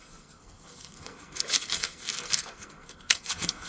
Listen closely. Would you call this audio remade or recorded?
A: remade